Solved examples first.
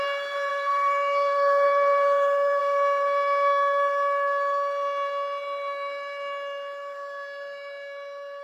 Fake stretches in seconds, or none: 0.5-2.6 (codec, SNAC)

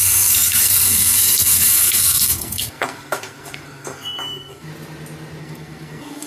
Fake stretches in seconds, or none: 0.0-4.7 (codec, SNAC); 5.4-6.3

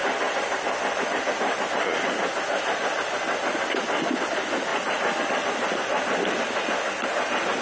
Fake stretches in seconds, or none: 0.0-1.2 (vocoder, BigVGAN v2); 4.7-5.3